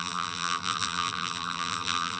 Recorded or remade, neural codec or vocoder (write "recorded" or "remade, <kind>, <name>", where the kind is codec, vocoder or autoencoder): remade, vocoder, BigVGAN v2